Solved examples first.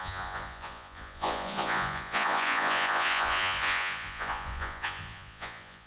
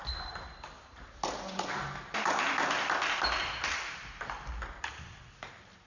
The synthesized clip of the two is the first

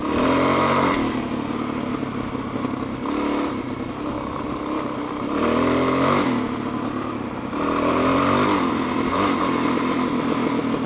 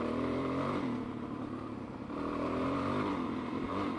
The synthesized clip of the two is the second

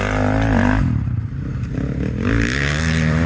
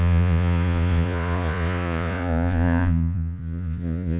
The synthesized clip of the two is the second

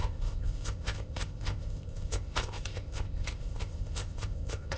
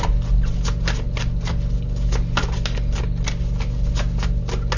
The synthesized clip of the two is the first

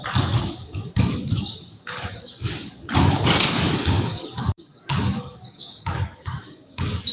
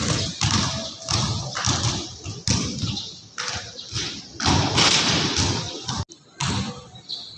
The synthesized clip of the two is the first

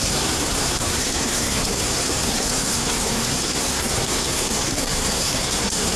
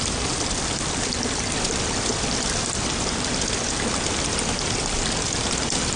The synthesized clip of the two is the first